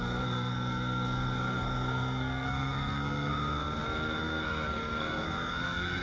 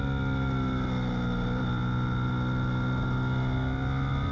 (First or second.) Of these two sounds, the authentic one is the second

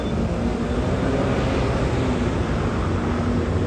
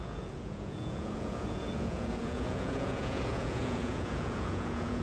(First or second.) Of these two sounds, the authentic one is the first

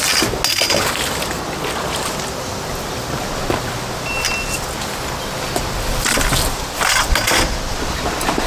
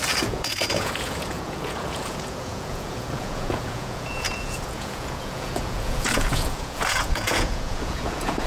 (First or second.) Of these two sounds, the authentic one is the first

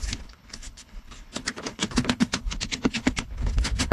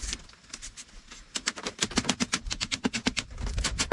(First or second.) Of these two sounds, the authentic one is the second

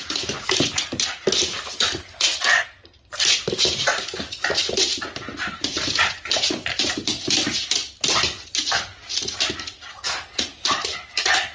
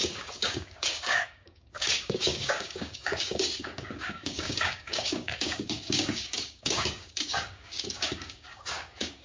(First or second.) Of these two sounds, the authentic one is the first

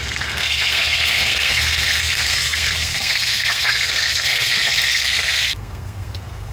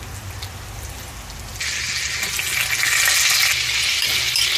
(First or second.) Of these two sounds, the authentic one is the second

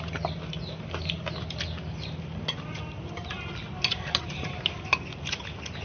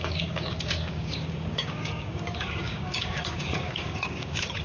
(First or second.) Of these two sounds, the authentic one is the first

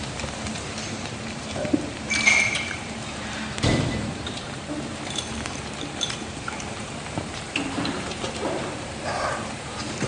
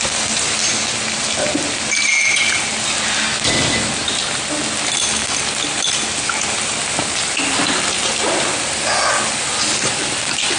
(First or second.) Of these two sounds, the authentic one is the second